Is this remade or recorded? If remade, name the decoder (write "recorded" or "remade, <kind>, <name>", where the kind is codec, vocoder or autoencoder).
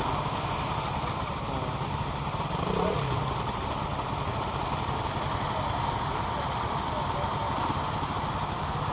recorded